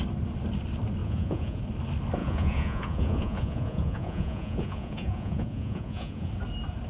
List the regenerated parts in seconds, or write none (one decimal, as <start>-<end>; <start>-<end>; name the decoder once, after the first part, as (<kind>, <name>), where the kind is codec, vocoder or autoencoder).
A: 1.0-1.6 (vocoder, Vocos); 2.2-6.3

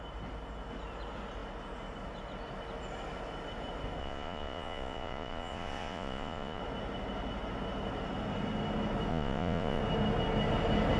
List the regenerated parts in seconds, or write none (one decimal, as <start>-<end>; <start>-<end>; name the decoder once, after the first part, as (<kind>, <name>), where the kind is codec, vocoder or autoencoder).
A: 4.0-6.6 (vocoder, Vocos); 9.1-9.8

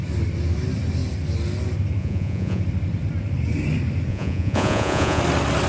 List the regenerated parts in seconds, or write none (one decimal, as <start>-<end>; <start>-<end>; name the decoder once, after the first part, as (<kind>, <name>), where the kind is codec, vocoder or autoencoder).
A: 2.0-2.6 (vocoder, Vocos); 4.1-5.2